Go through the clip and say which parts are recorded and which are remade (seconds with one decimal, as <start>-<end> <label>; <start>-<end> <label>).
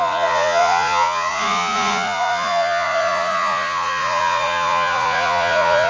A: 0.0-5.9 remade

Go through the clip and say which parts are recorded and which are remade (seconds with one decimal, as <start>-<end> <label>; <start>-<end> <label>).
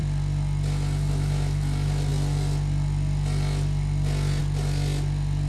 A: 0.0-5.5 recorded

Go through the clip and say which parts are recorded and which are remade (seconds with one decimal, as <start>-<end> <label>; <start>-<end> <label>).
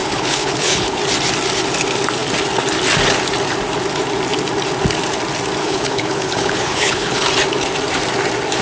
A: 0.0-1.0 remade; 1.0-5.6 recorded; 5.6-7.3 remade; 7.3-8.6 recorded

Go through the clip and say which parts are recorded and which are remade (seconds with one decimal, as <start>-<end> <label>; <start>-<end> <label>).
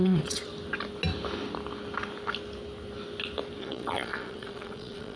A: 0.0-0.5 remade; 0.5-3.6 recorded; 3.6-5.2 remade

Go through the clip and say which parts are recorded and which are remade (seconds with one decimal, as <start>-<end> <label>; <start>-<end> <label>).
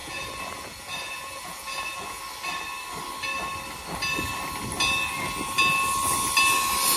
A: 0.0-2.2 remade; 2.2-7.0 recorded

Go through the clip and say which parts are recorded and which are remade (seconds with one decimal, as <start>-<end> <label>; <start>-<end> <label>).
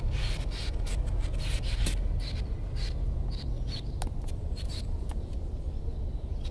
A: 0.0-6.5 remade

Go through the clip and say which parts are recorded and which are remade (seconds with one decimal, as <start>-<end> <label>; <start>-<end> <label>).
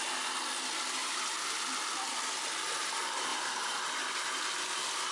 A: 0.0-1.0 recorded; 1.0-1.6 remade; 1.6-3.3 recorded; 3.3-3.8 remade; 3.8-5.1 recorded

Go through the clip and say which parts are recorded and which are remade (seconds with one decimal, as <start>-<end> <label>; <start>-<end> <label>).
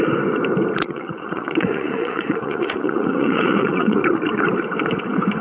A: 0.0-0.8 recorded; 0.8-4.0 remade; 4.0-5.4 recorded